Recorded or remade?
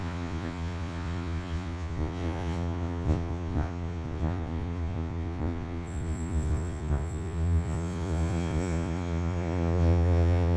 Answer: remade